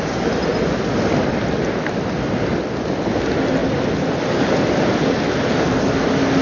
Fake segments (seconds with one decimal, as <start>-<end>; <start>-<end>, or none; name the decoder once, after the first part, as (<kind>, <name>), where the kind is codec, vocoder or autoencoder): none